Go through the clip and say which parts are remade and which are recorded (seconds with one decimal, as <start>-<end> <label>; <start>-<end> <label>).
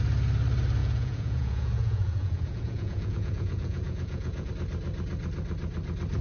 0.0-0.8 recorded; 0.8-4.5 remade; 4.5-6.2 recorded